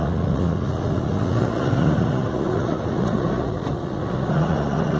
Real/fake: fake